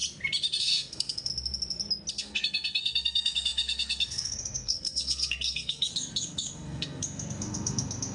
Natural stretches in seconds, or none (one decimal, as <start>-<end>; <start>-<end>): 0.0-0.6; 1.3-2.1